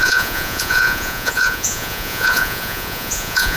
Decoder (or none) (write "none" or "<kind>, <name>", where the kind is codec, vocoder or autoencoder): vocoder, Vocos